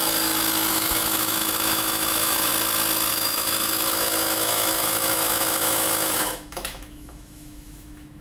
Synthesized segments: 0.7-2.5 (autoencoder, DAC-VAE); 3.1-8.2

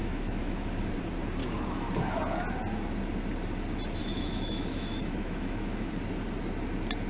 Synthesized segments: 0.0-0.8 (autoencoder, DAC-VAE); 1.4-1.9; 4.0-5.9

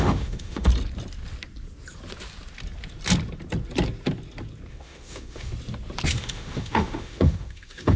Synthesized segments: 0.0-0.7 (autoencoder, DAC-VAE); 4.7-5.5; 6.1-8.0

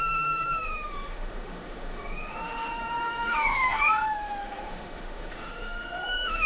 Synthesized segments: 0.0-6.5 (autoencoder, DAC-VAE)

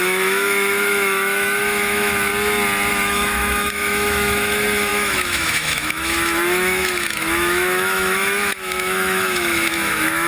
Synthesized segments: 0.0-2.3 (autoencoder, DAC-VAE); 2.9-10.3

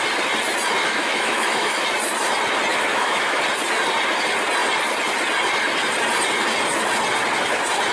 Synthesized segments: 0.8-1.8 (autoencoder, DAC-VAE); 2.7-3.4

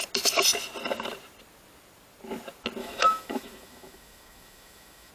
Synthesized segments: 2.8-5.1 (autoencoder, DAC-VAE)

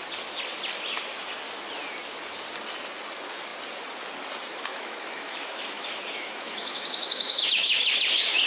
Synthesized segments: 4.7-7.9 (autoencoder, DAC-VAE)